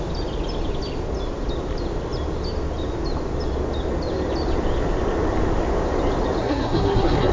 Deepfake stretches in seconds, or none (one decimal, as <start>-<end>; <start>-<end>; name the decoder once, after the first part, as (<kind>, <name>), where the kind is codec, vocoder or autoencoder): 6.4-7.3 (codec, SNAC)